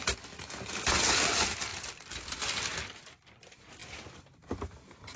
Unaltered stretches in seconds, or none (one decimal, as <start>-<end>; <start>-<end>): 0.0-5.2